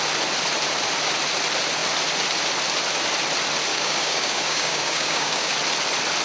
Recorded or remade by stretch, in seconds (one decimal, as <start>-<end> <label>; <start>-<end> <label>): 0.0-3.7 recorded; 3.7-5.5 remade; 5.5-6.2 recorded